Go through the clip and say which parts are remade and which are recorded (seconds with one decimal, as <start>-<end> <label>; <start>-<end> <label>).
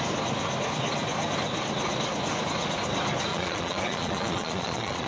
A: 0.0-3.3 recorded; 3.3-5.1 remade